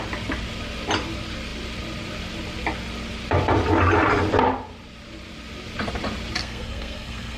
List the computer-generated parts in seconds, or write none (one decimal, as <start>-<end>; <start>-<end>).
6.4-7.4